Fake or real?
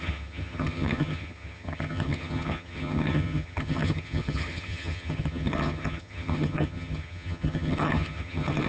fake